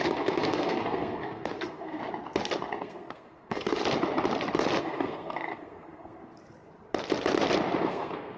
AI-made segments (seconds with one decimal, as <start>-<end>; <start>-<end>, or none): 0.0-2.0; 2.8-3.8; 4.8-6.2; 7.8-8.4